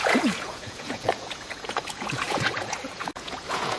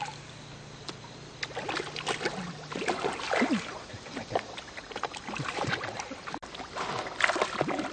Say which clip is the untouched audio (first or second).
second